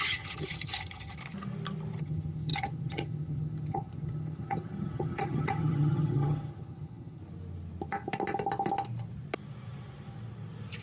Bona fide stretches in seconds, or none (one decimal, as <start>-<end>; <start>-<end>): 1.2-2.0; 7.2-10.8

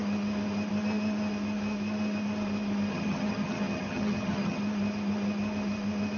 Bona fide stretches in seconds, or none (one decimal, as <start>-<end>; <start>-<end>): 0.0-2.9; 4.6-6.2

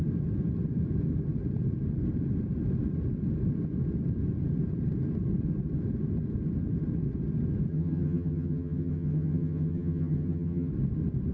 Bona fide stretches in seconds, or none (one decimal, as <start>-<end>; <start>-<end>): 0.0-7.7; 10.7-11.3

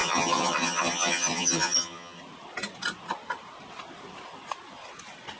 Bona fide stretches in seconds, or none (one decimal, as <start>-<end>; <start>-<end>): 2.2-5.4

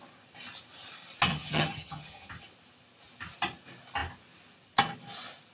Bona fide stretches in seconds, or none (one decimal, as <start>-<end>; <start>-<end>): 0.0-1.3; 2.3-5.5

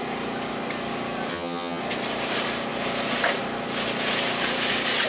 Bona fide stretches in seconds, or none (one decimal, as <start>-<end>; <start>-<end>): 0.0-1.3; 1.8-5.1

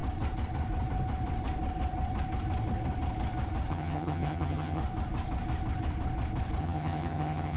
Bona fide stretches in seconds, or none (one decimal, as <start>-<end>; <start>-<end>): 0.0-3.7; 4.8-6.6

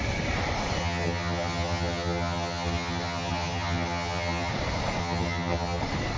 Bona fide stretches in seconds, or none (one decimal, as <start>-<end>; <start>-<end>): 0.0-0.8; 4.5-5.0; 5.8-6.2